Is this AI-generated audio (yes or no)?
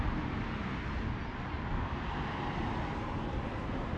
no